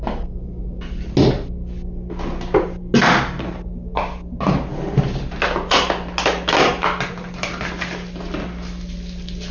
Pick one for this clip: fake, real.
real